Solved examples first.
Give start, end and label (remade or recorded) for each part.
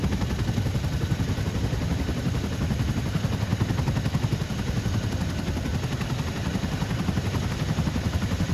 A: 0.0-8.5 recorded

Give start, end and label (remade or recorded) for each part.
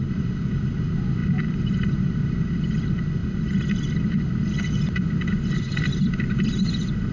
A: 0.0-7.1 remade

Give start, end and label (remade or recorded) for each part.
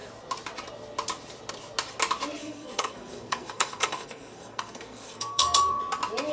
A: 0.0-2.4 recorded; 2.4-5.8 remade; 5.8-6.3 recorded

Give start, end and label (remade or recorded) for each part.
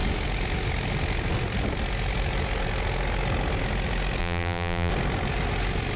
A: 0.0-4.2 recorded; 4.2-4.9 remade; 4.9-6.0 recorded